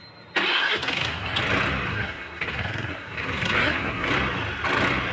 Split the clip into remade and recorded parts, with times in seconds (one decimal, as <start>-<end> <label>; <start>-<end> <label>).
0.0-0.5 recorded; 0.5-1.4 remade; 1.4-1.9 recorded; 1.9-4.1 remade; 4.1-5.1 recorded